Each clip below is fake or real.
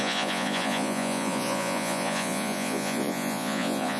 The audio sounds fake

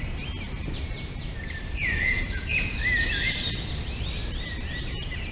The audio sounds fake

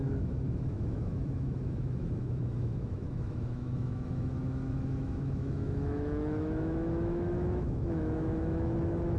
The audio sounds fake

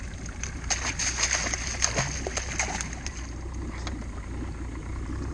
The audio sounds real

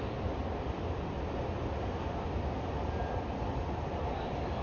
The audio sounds real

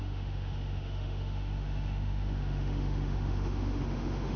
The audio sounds fake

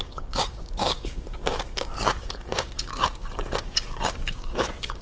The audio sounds fake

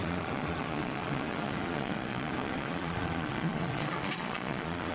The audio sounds fake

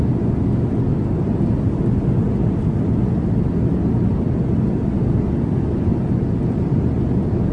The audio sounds real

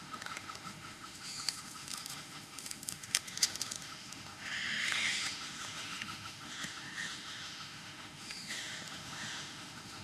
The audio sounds fake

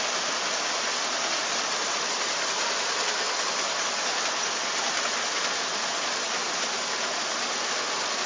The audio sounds real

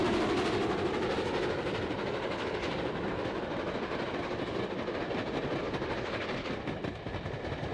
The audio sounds real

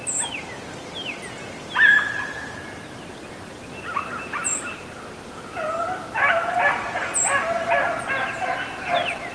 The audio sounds real